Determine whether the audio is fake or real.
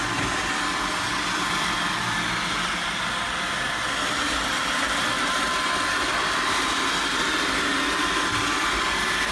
real